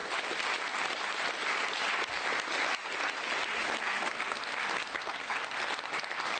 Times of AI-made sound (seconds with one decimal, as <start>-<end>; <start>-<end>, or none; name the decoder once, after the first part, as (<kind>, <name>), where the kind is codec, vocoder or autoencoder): 3.8-4.4 (codec, SNAC); 5.0-5.4